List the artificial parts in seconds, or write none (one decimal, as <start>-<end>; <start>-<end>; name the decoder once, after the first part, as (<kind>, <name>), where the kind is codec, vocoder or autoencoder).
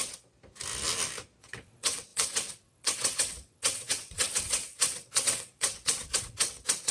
1.4-6.9 (vocoder, WaveNeXt)